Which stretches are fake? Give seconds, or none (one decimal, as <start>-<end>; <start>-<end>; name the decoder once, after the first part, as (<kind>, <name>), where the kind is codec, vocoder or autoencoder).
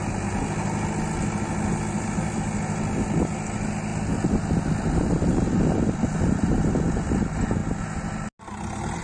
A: none